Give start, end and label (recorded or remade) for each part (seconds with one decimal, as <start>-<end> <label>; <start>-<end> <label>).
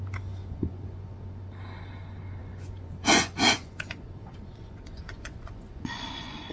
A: 0.0-0.4 recorded; 0.4-1.4 remade; 1.4-2.4 recorded; 2.4-6.5 remade